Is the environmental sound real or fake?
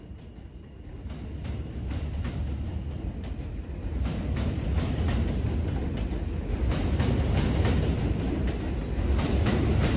real